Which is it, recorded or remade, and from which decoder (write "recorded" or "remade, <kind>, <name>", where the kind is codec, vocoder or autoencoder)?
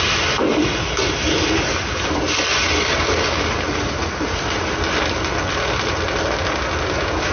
recorded